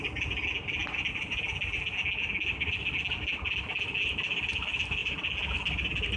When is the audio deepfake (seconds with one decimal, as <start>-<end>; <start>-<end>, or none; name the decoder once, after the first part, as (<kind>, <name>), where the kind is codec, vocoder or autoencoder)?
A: 0.8-1.4 (vocoder, BigVGAN v2)